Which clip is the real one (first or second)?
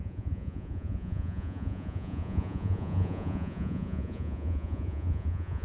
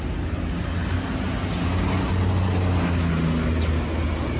second